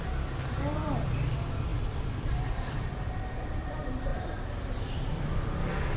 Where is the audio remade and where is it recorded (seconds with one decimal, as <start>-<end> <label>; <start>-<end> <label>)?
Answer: 0.0-4.1 remade; 4.1-6.0 recorded